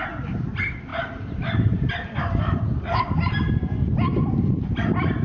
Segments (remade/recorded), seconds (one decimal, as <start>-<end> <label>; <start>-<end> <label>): 0.0-0.9 recorded; 0.9-1.9 remade; 1.9-5.2 recorded